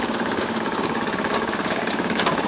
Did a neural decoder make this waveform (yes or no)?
yes